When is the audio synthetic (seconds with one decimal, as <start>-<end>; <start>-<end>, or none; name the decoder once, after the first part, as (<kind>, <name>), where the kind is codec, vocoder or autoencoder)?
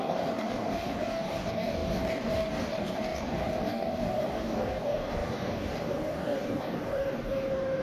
0.0-7.8 (codec, DAC)